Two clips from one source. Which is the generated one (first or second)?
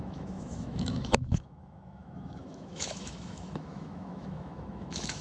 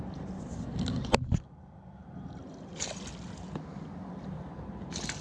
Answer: first